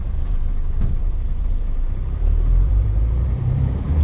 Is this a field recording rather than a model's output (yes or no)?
no